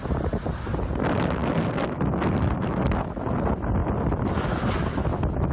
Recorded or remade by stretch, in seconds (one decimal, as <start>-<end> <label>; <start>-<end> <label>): 0.0-5.5 recorded